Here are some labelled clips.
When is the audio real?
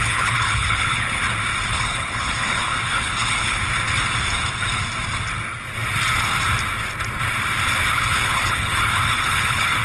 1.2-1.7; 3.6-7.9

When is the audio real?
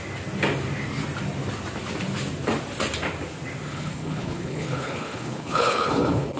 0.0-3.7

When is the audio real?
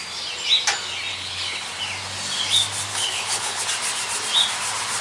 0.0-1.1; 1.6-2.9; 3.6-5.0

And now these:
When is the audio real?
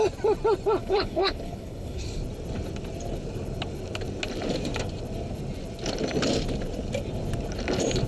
0.0-0.8; 2.2-8.1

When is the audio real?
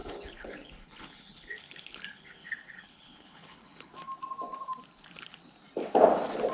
3.9-6.5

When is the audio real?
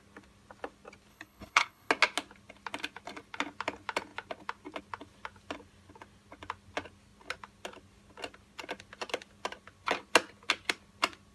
0.0-1.1; 1.9-11.3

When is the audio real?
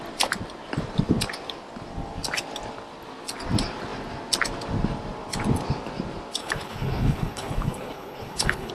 0.0-6.4